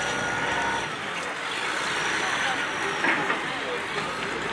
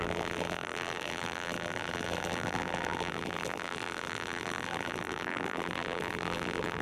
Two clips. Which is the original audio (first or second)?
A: first